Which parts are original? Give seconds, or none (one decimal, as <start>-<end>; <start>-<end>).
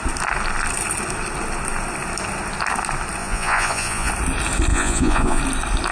0.0-3.2; 4.1-4.7; 5.4-5.9